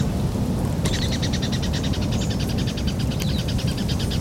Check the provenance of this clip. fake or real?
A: real